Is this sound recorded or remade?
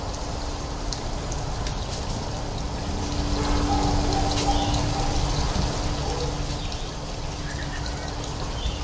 recorded